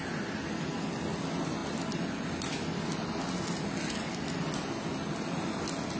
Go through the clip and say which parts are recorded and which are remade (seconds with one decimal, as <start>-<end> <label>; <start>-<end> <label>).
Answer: 0.0-6.0 recorded